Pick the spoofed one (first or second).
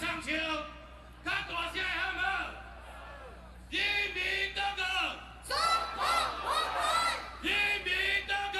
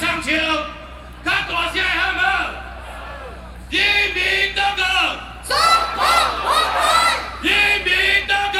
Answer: second